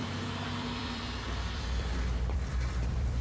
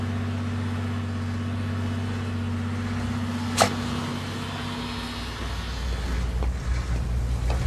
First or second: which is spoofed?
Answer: first